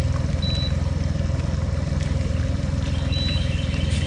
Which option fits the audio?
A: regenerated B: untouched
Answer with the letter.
B